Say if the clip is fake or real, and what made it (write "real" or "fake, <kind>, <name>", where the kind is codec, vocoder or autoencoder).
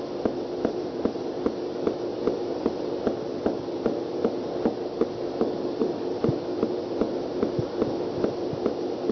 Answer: real